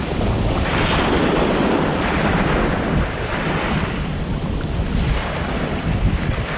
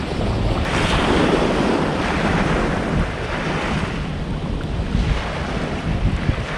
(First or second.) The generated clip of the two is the first